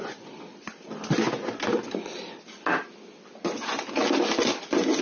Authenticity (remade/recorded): recorded